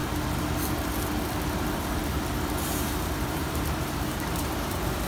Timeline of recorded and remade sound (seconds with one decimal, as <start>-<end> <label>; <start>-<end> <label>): 0.0-2.0 recorded; 2.0-5.1 remade